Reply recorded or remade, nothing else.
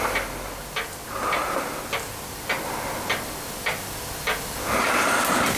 recorded